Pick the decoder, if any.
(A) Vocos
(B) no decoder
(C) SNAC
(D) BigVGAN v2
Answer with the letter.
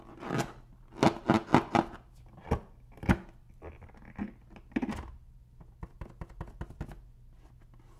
B